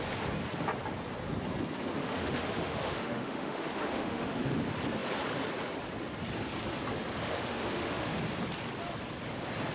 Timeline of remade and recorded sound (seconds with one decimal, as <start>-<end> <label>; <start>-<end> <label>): 0.0-2.0 recorded; 2.0-4.6 remade; 4.6-7.2 recorded; 7.2-8.2 remade; 8.2-9.7 recorded